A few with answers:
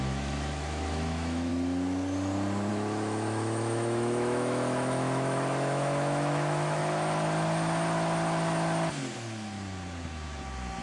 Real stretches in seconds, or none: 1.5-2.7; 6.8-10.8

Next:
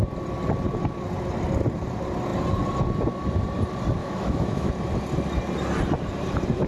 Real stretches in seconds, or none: 0.0-4.0; 4.7-6.7

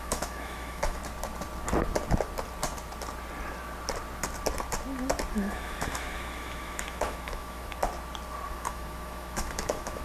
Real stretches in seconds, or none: 1.0-5.3; 7.8-8.5